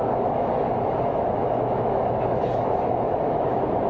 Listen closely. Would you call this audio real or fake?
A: fake